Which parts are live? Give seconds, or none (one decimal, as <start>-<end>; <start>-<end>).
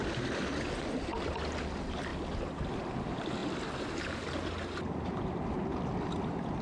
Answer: 2.1-2.8; 3.4-4.6